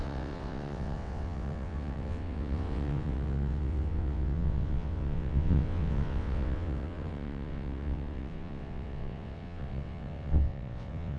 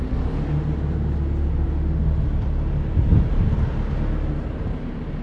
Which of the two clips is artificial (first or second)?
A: first